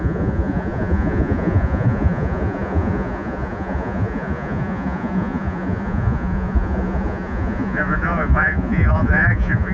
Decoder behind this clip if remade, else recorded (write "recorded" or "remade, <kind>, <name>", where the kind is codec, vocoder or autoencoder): remade, vocoder, Vocos